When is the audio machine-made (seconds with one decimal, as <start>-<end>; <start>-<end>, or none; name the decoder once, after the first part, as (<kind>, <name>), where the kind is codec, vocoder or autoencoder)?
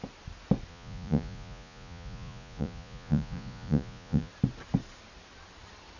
0.7-4.3 (vocoder, Vocos)